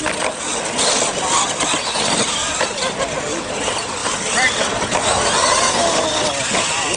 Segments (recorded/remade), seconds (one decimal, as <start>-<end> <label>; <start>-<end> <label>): 0.0-7.0 recorded